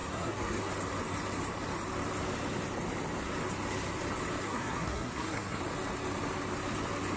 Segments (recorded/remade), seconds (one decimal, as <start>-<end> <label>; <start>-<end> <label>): 0.0-0.7 remade; 0.7-4.4 recorded; 4.4-5.6 remade; 5.6-7.2 recorded

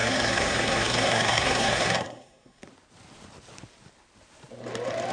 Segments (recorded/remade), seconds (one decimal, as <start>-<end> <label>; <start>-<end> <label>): 0.0-2.6 remade; 2.6-5.1 recorded